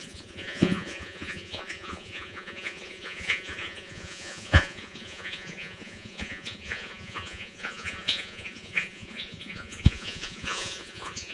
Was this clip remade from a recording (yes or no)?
yes